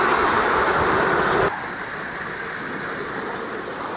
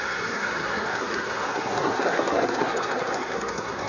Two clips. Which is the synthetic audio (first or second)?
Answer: second